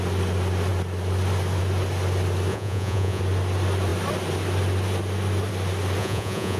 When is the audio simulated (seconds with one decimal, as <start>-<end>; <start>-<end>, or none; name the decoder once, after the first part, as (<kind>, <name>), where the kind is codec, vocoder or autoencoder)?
2.5-3.2 (vocoder, Vocos); 6.0-6.6